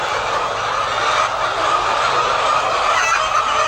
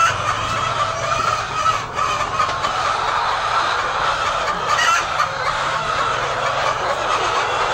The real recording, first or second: first